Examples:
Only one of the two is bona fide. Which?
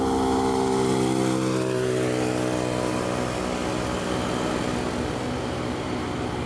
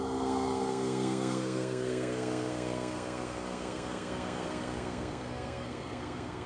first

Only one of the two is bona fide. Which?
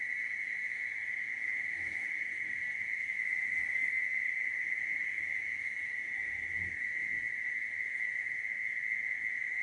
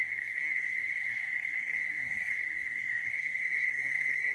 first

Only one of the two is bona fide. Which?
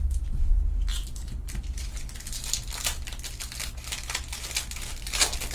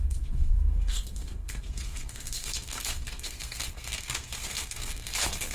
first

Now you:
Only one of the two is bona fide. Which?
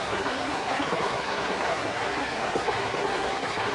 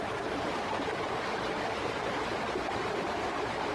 second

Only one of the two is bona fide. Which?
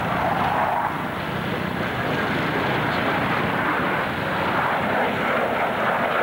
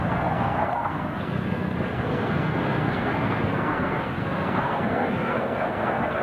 first